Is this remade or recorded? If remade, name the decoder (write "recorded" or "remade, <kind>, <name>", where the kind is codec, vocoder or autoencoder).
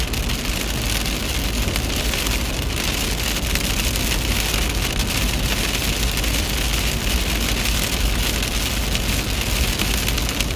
recorded